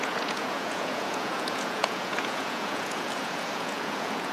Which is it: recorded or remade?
remade